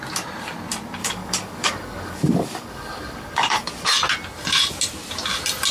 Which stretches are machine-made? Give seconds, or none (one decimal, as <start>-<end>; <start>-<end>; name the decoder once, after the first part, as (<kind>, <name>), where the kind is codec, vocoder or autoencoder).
1.0-3.9 (codec, DAC)